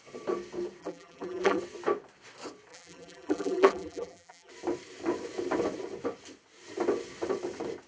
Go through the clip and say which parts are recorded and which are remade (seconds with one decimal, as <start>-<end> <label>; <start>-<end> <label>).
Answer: 0.0-0.8 recorded; 0.8-1.6 remade; 1.6-2.7 recorded; 2.7-4.5 remade; 4.5-7.9 recorded